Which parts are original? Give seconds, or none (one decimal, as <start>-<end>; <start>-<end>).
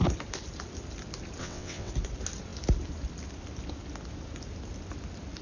0.0-1.4; 1.9-5.4